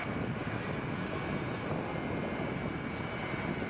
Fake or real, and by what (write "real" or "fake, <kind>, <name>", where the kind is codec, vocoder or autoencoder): real